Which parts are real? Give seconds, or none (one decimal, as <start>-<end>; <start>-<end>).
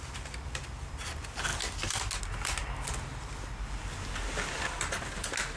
0.0-5.6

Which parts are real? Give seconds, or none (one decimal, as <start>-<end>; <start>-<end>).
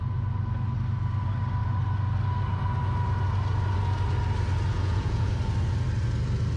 0.0-4.7; 5.3-6.6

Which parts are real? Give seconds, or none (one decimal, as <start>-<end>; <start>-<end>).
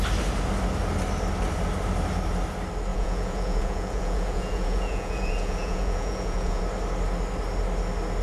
0.0-2.9; 6.6-8.2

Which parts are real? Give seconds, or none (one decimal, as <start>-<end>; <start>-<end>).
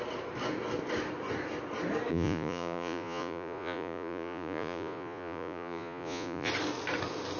0.0-2.1; 6.5-7.4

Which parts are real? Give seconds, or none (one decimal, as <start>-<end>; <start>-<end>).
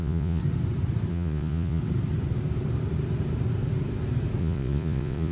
0.4-1.1; 1.8-4.4